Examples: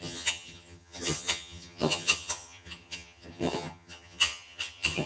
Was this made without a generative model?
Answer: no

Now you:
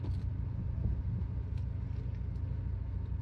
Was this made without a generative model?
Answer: yes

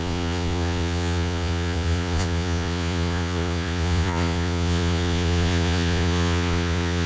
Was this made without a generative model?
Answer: no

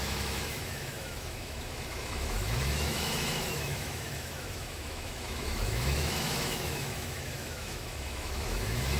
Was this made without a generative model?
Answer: no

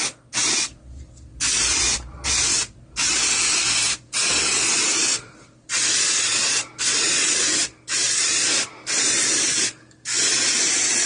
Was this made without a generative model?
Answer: yes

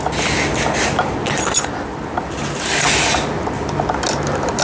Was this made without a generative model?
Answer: yes